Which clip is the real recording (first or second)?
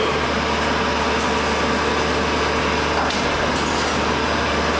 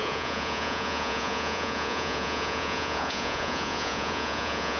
first